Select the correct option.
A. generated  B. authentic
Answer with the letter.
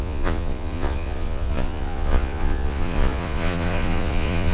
A